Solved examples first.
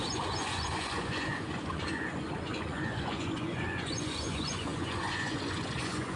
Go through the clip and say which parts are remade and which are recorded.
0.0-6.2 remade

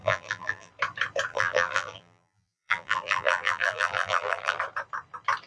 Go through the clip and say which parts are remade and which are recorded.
0.0-0.7 remade; 0.7-1.3 recorded; 1.3-4.6 remade; 4.6-5.5 recorded

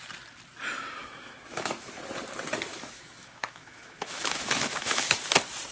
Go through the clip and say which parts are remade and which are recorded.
0.0-1.0 recorded; 1.0-1.9 remade; 1.9-2.7 recorded; 2.7-5.2 remade; 5.2-5.7 recorded

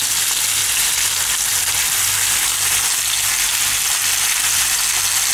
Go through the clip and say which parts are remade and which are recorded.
0.0-5.3 recorded

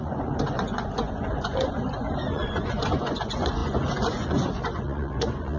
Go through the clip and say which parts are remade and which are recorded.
0.0-5.6 remade

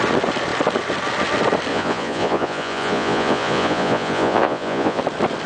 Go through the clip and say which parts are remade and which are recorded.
0.0-1.7 recorded; 1.7-5.0 remade; 5.0-5.5 recorded

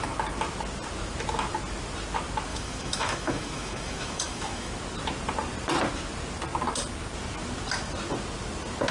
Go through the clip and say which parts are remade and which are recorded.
0.0-2.5 recorded; 2.5-4.7 remade; 4.7-8.9 recorded